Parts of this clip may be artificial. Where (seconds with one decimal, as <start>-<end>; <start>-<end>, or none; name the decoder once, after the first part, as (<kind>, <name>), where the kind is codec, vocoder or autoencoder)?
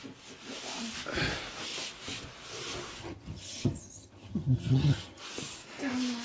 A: 3.0-5.2 (vocoder, HiFi-GAN)